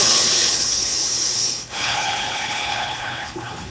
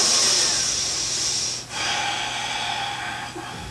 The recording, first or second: second